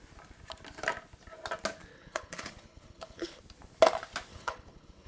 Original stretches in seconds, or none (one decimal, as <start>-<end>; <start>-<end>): 0.0-1.9; 3.4-4.3